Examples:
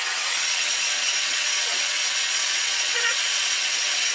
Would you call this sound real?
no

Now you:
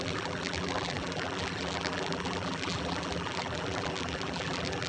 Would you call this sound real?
no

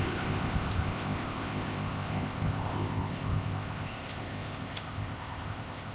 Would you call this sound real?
no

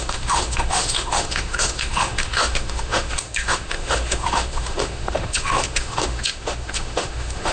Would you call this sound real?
no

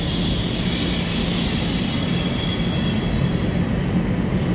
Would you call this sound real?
yes